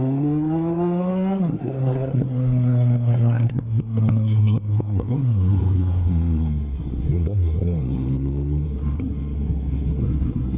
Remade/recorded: remade